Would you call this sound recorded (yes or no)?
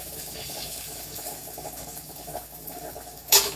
no